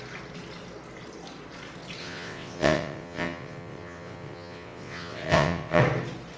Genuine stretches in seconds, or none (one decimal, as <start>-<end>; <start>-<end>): 0.0-2.0; 5.8-6.4